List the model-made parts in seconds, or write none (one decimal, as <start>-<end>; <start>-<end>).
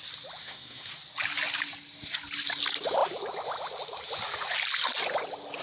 0.4-0.9